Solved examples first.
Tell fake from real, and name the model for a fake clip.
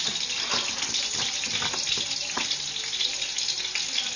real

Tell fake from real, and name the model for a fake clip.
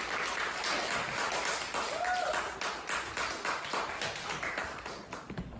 real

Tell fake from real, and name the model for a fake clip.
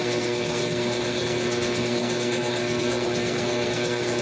fake, codec, SNAC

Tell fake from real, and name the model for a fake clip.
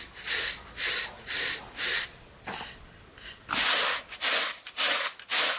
real